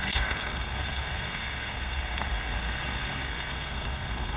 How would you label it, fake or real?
fake